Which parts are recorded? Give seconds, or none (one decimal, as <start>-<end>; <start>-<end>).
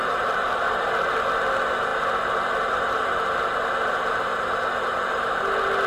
1.1-5.9